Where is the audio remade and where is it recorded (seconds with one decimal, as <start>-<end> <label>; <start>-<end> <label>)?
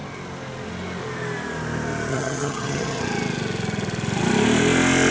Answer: 0.0-2.1 recorded; 2.1-3.0 remade; 3.0-5.1 recorded